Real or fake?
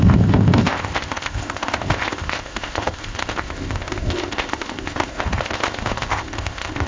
fake